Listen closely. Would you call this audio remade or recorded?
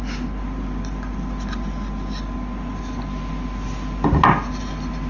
recorded